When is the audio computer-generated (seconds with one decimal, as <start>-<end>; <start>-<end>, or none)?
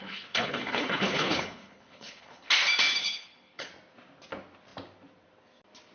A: 0.0-2.5; 3.0-3.7